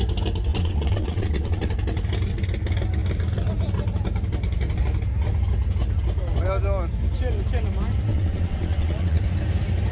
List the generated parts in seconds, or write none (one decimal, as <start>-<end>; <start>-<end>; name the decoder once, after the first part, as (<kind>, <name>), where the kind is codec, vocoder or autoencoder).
0.5-1.7 (vocoder, WaveNeXt); 8.1-9.2